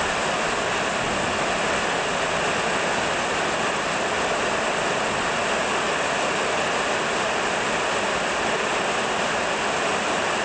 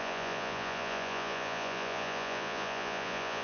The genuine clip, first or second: first